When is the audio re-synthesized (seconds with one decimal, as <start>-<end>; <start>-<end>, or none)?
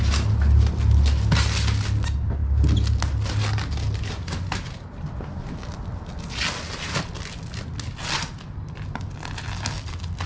none